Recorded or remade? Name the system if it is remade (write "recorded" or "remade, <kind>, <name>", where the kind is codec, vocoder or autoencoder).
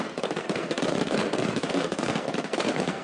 remade, codec, SNAC